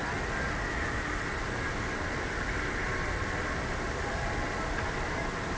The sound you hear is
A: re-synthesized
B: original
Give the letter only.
B